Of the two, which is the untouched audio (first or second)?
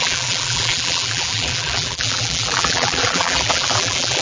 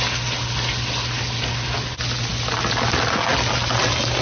second